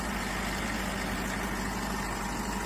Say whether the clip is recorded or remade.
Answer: recorded